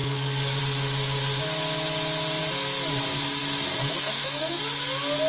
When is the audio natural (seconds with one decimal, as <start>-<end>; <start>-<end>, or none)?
0.6-3.8; 4.6-5.3